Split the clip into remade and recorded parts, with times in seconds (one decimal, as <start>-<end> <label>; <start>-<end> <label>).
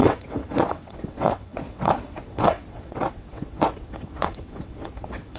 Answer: 0.0-5.4 remade